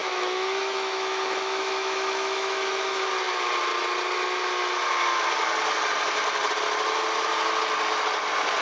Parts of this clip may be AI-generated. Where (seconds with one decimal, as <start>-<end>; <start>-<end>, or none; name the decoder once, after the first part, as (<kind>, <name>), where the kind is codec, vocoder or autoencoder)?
0.0-3.0 (autoencoder, DAC-VAE)